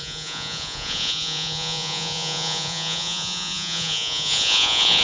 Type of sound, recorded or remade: remade